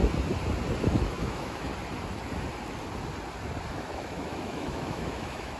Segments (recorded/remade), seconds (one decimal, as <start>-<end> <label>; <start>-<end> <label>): 0.0-0.8 recorded; 0.8-1.7 remade; 1.7-3.7 recorded; 3.7-5.6 remade